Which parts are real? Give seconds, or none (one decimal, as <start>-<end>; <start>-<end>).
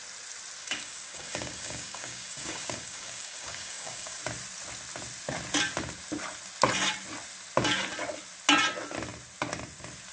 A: 0.0-0.6; 4.2-10.1